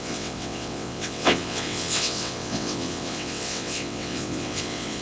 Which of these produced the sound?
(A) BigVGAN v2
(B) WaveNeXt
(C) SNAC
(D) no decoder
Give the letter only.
B